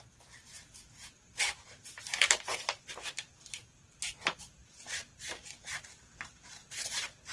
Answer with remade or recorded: remade